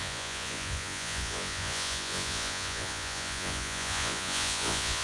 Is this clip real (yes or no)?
no